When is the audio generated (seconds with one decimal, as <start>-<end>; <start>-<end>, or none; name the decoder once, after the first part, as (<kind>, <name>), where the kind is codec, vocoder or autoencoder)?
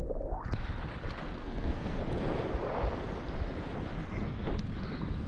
1.4-2.0 (codec, SNAC)